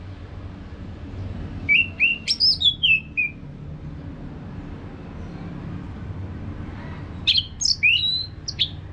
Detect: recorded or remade recorded